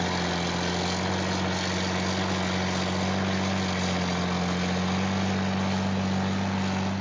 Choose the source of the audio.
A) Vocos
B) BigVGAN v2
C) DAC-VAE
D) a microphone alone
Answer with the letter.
D